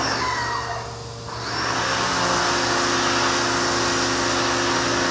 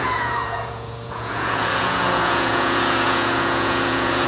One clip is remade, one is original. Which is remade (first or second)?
second